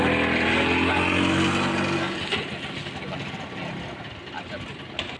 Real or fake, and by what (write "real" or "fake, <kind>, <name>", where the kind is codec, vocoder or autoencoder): real